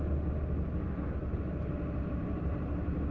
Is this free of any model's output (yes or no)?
yes